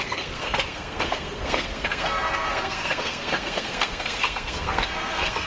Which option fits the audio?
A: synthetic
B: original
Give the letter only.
A